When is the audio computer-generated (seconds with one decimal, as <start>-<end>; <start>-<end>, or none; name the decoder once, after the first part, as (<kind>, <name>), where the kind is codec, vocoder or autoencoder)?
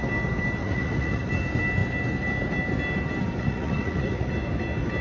0.6-1.3 (vocoder, Vocos); 3.4-4.3